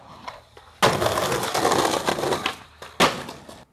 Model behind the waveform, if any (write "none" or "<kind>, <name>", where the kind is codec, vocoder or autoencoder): none